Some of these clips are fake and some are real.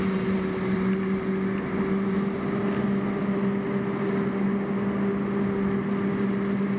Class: real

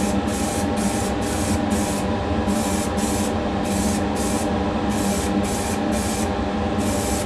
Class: real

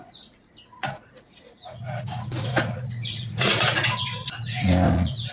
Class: fake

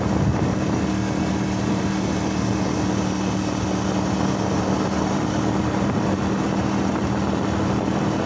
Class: real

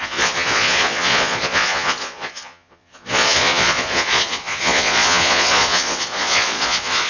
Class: fake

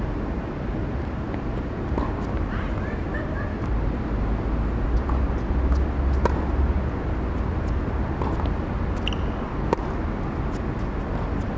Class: real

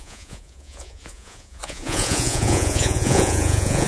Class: fake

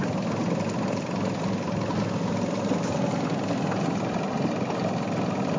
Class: real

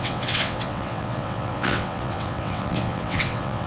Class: fake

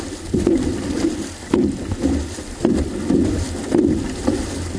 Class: real